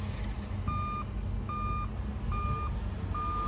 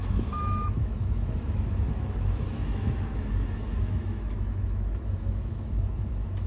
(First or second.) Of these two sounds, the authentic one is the first